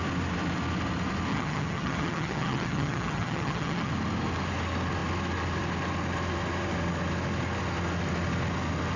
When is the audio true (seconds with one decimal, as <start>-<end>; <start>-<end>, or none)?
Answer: 0.0-1.3; 3.9-9.0